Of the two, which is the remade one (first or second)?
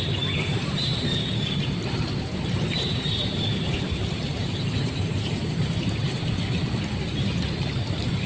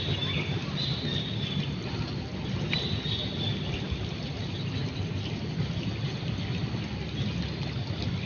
first